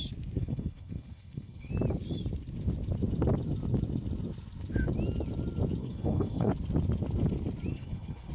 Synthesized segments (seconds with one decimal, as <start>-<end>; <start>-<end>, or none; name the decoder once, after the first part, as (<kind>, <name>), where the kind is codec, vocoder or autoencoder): 0.4-1.7 (codec, HILCodec); 5.8-6.5; 7.7-8.3